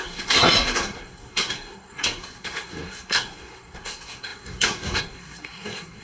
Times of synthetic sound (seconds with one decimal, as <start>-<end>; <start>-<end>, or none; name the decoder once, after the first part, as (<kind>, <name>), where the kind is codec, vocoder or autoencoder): 0.0-6.0 (codec, SNAC)